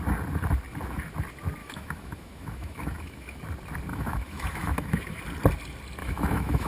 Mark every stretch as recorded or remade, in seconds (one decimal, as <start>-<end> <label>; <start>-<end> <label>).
0.0-1.6 recorded; 1.6-3.4 remade; 3.4-3.9 recorded; 3.9-5.2 remade; 5.2-6.0 recorded; 6.0-6.7 remade